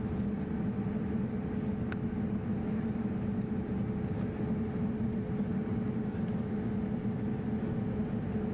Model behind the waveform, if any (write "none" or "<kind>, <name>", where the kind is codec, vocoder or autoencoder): none